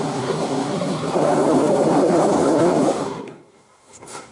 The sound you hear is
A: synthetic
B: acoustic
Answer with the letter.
A